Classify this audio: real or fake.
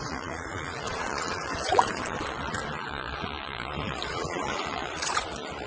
fake